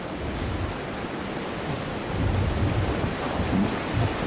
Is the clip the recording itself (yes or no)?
yes